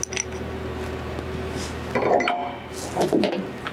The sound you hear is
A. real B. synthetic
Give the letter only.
A